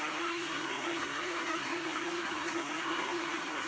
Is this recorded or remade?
remade